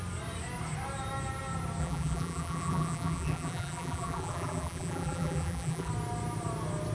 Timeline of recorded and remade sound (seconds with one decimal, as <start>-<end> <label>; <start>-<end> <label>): 0.0-1.8 recorded; 1.8-5.9 remade; 5.9-6.9 recorded